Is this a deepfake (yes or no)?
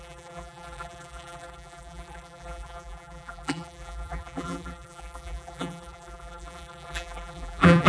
yes